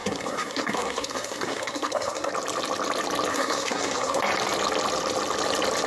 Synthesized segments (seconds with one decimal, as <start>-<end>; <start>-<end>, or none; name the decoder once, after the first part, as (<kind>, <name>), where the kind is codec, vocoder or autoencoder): 0.0-2.3 (codec, SNAC); 3.3-4.2